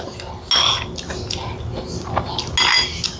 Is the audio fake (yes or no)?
no